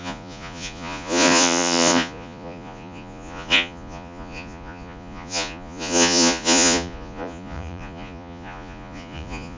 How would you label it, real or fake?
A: fake